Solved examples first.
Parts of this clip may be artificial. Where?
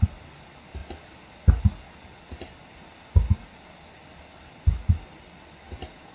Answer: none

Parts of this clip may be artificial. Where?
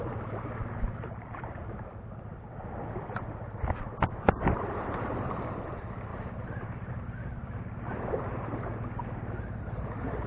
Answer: none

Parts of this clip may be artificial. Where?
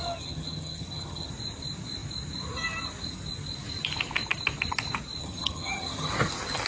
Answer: 0.0-1.3 (vocoder, HiFi-GAN); 5.2-6.1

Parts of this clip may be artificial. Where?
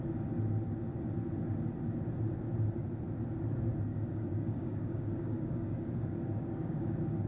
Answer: 3.9-7.3 (codec, DAC)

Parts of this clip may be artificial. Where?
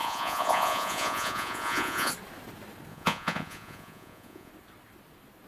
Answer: 0.0-2.1 (vocoder, Vocos); 2.9-4.5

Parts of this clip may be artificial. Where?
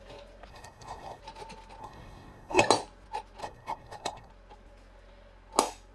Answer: 0.5-1.2 (codec, SNAC); 1.8-2.6; 3.4-4.3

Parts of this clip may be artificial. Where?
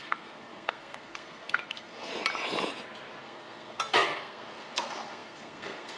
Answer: 0.0-2.1 (codec, SNAC); 3.2-6.0